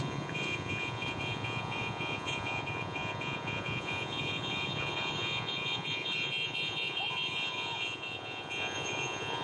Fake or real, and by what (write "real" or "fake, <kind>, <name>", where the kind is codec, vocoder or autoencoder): fake, vocoder, Vocos